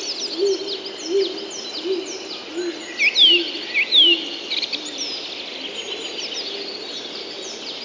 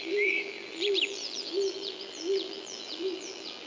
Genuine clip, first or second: first